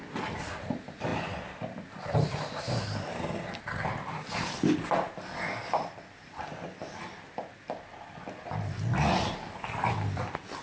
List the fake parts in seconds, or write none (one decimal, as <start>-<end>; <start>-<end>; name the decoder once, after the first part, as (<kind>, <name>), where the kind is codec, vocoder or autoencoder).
none